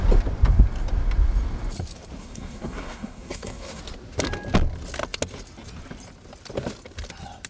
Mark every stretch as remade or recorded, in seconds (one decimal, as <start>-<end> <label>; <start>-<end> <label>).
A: 0.0-2.2 recorded; 2.2-3.8 remade; 3.8-7.5 recorded